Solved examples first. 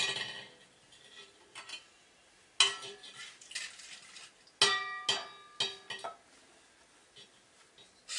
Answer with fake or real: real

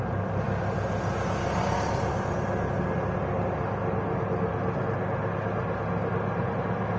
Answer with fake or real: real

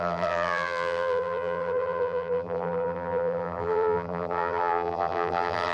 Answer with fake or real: fake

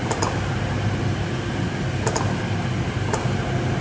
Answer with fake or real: real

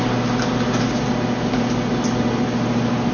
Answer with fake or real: real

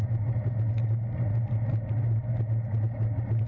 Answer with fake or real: real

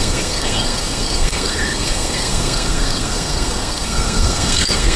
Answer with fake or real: fake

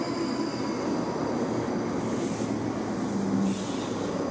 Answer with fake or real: real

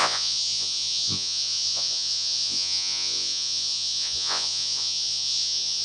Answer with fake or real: fake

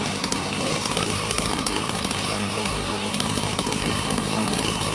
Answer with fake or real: fake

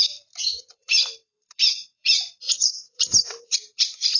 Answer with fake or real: fake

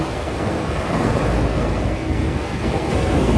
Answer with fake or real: fake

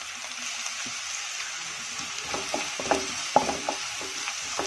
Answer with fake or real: real